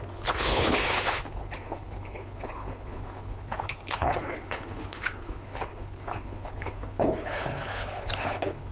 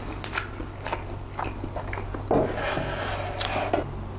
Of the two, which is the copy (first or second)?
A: first